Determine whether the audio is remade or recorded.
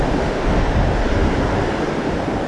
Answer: recorded